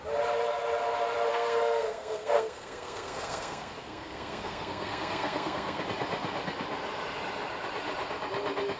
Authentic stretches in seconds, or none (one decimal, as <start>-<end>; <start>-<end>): 0.0-1.3; 5.8-8.8